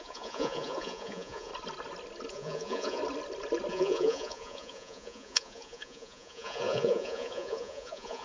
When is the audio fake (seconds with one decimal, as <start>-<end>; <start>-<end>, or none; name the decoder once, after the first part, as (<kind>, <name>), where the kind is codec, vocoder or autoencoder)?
0.0-1.5 (vocoder, Vocos); 2.3-3.0; 3.7-8.2